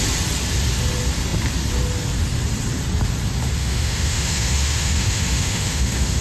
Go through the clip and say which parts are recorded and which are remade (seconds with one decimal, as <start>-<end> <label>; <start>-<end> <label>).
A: 0.0-3.6 recorded; 3.6-6.2 remade